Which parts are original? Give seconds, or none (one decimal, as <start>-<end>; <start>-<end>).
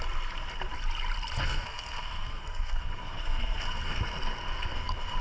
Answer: 0.0-1.4; 4.0-4.4